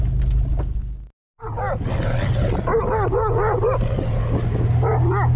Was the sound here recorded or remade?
recorded